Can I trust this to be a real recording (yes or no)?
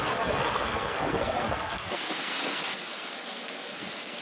no